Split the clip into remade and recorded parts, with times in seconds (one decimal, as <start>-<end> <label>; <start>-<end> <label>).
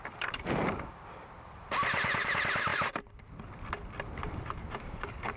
0.0-2.7 remade; 2.7-4.2 recorded; 4.2-5.4 remade